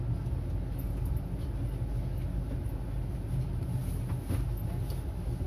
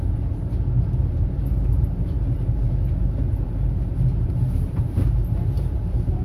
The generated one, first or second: second